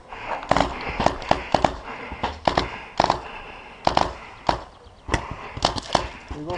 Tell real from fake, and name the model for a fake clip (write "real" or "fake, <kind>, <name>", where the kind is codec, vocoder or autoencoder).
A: real